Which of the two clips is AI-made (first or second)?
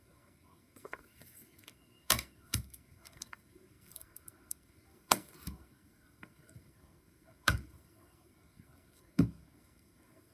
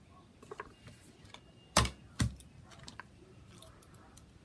first